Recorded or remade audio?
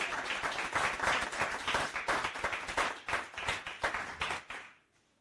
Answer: recorded